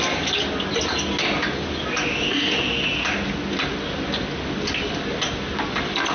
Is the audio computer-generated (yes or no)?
no